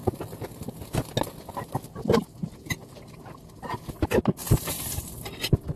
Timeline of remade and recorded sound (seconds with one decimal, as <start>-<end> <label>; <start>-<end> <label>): 0.0-5.8 recorded